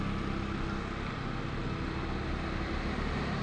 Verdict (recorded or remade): recorded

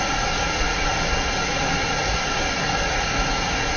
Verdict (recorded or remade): remade